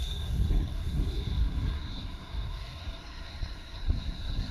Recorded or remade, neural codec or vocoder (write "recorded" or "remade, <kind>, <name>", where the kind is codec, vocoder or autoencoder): remade, codec, SNAC